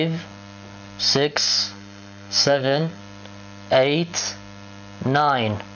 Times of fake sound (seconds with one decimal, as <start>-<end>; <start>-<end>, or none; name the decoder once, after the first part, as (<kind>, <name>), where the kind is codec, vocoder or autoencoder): 1.3-3.0 (codec, SNAC)